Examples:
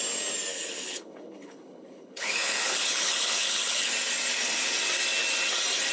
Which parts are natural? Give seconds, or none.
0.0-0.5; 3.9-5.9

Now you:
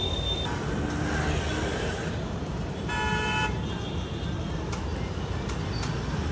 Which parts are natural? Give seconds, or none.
0.0-1.7; 3.8-6.3

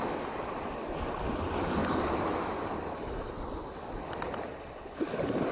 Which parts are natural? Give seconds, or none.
0.0-5.5

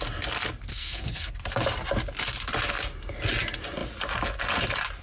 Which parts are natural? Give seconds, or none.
0.0-0.7; 1.3-5.0